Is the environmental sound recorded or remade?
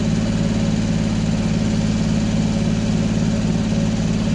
recorded